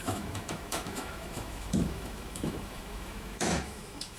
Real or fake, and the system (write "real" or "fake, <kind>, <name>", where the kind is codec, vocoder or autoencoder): fake, autoencoder, DAC-VAE